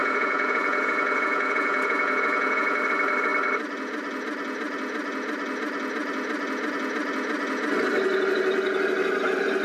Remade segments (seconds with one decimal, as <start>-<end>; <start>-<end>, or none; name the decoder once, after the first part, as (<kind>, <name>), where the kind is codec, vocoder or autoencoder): 0.0-2.8 (vocoder, Vocos)

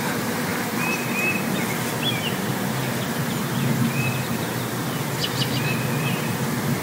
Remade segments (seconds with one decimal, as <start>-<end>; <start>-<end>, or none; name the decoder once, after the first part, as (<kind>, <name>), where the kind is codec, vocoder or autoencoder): none

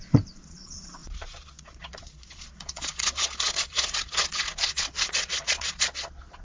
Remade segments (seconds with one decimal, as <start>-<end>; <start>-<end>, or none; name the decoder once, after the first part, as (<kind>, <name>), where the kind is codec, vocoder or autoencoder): 0.0-6.4 (vocoder, Vocos)

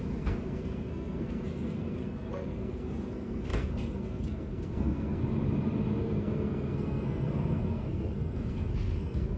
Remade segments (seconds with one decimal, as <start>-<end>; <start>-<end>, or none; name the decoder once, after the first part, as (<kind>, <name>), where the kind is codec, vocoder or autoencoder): 0.0-5.2 (codec, SNAC); 6.0-9.4